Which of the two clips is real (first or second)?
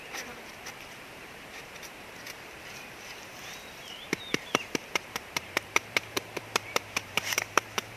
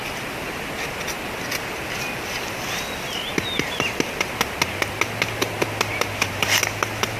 second